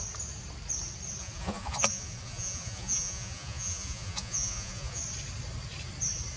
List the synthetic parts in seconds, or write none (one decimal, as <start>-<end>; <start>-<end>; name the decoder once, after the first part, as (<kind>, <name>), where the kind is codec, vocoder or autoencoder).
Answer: 1.2-5.0 (vocoder, Vocos)